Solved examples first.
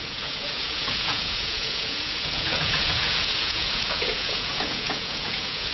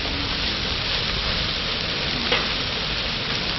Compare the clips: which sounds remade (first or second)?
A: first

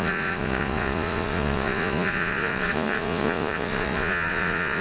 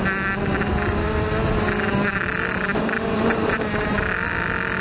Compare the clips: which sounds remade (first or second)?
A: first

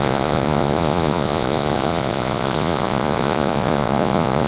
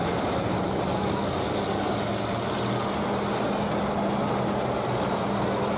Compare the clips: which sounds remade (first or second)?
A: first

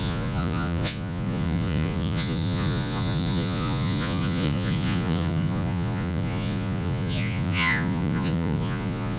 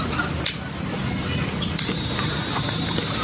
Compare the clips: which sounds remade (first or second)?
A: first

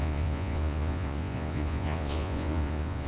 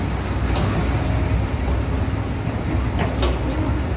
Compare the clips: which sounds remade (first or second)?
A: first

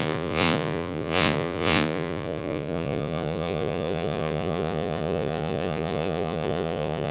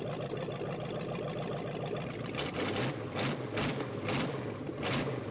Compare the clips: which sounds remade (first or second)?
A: first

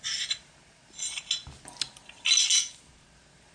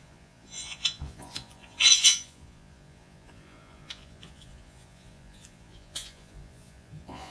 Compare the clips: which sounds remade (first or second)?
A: second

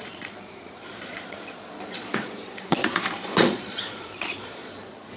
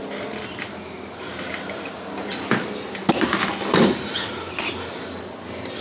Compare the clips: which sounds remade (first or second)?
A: first